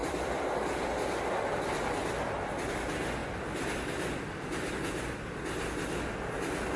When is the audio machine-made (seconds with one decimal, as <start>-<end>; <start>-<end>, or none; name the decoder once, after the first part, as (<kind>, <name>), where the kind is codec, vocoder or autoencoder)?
0.0-0.6 (vocoder, BigVGAN v2); 3.2-5.0